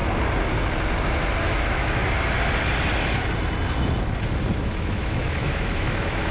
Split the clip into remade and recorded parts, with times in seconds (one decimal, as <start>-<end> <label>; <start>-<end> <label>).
0.0-1.4 recorded; 1.4-2.0 remade; 2.0-4.6 recorded; 4.6-6.3 remade